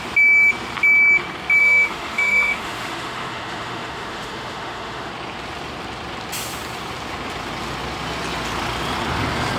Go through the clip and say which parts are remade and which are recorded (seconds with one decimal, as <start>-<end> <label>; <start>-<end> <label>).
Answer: 0.0-1.6 recorded; 1.6-5.1 remade; 5.1-9.6 recorded